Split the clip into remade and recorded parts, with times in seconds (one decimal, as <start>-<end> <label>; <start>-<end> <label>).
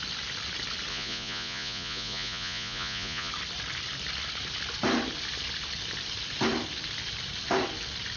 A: 0.0-0.9 recorded; 0.9-3.3 remade; 3.3-8.2 recorded